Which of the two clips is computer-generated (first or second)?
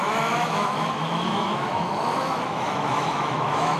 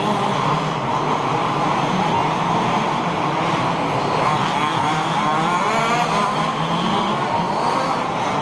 first